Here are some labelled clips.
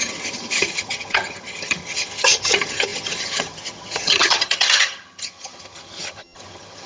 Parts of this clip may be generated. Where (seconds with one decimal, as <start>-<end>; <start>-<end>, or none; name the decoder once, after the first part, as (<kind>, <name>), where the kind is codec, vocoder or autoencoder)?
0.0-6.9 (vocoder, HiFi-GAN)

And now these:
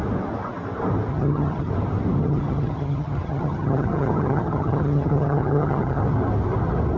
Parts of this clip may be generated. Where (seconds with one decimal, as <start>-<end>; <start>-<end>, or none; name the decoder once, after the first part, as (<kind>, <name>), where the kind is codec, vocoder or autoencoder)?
1.1-1.7 (vocoder, HiFi-GAN); 2.2-6.0

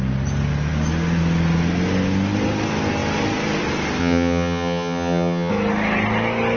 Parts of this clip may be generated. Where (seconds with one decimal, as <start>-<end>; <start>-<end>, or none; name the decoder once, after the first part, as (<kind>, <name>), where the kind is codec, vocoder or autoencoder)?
4.0-5.5 (vocoder, HiFi-GAN)